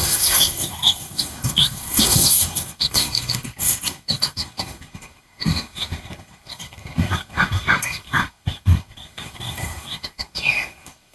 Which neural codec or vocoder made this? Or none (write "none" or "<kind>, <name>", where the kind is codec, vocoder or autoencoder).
codec, SNAC